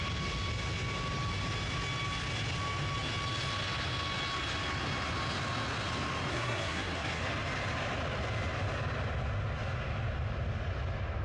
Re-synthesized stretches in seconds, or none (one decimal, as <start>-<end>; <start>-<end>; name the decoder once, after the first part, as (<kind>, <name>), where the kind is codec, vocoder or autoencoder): 6.3-7.2 (codec, SNAC)